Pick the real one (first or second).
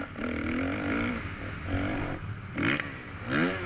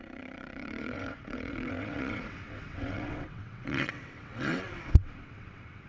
first